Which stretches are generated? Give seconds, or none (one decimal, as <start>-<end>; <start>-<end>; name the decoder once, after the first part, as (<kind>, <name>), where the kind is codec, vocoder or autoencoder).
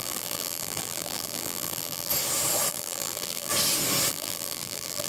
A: 0.0-2.1 (vocoder, BigVGAN v2); 2.7-3.5; 4.1-5.1